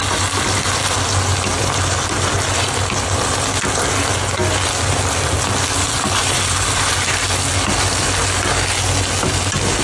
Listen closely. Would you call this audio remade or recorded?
recorded